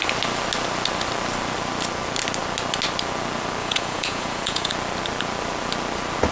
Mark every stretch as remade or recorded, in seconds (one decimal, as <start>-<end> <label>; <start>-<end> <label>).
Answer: 0.0-3.6 recorded; 3.6-4.7 remade; 4.7-6.3 recorded